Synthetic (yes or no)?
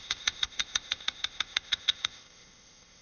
yes